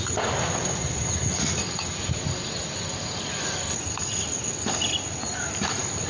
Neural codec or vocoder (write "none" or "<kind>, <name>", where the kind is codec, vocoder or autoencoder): none